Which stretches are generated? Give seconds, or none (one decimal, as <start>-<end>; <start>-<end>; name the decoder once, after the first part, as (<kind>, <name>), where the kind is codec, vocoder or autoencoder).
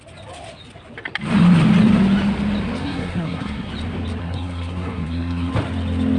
2.8-3.7 (codec, SNAC); 4.2-5.5